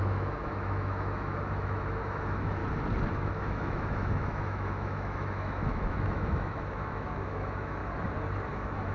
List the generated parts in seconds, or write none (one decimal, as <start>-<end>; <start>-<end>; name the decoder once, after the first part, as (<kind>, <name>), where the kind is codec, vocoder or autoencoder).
0.0-2.6 (autoencoder, DAC-VAE); 3.1-7.8; 8.5-8.9